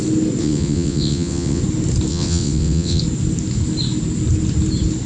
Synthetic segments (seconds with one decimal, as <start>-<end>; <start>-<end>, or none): 0.4-1.6; 2.1-3.0